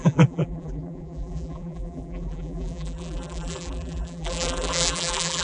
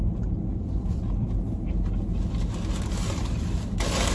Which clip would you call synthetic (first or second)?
first